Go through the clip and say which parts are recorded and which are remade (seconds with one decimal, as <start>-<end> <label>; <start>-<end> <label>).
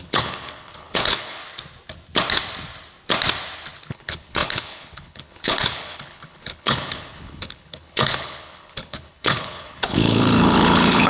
0.0-1.4 remade; 1.4-3.9 recorded; 3.9-11.1 remade